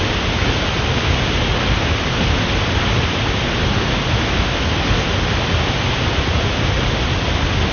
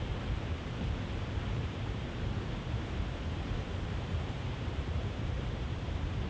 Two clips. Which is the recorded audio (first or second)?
first